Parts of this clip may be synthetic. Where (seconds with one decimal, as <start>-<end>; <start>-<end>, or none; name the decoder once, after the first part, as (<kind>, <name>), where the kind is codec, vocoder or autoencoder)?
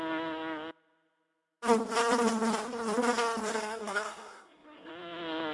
3.5-4.9 (codec, SNAC)